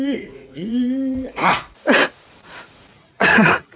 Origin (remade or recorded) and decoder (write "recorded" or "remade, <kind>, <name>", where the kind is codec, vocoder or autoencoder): remade, vocoder, Vocos